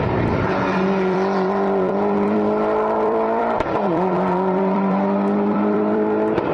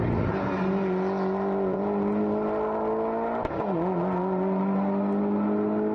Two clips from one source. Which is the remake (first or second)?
first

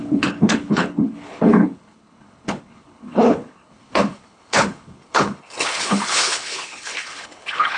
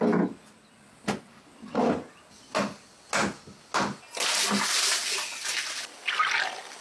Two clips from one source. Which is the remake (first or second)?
first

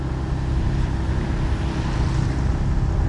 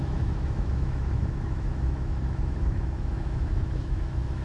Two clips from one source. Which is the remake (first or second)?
second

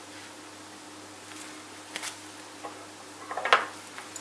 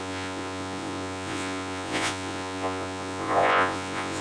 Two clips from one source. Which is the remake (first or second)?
second